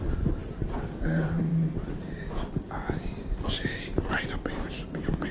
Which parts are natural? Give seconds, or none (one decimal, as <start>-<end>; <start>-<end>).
0.0-5.3